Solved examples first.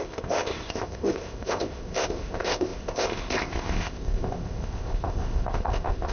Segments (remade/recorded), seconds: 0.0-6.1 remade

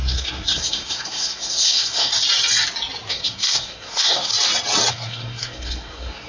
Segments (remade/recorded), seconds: 0.0-2.1 remade; 2.1-3.1 recorded; 3.1-4.3 remade; 4.3-4.9 recorded; 4.9-6.3 remade

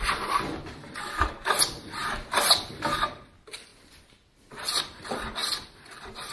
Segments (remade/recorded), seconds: 0.0-3.7 recorded; 3.7-4.8 remade; 4.8-5.4 recorded; 5.4-6.3 remade